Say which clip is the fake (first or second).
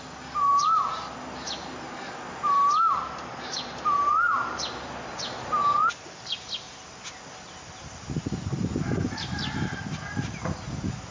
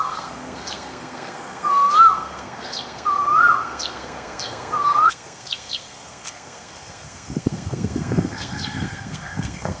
second